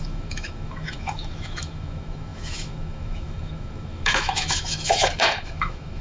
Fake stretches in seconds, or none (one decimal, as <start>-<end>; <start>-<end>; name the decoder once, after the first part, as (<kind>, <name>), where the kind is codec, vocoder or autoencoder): 0.0-6.0 (autoencoder, DAC-VAE)